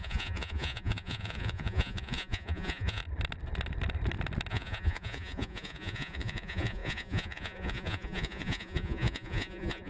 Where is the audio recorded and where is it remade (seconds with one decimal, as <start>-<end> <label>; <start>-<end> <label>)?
0.0-3.0 remade; 3.0-4.5 recorded; 4.5-9.9 remade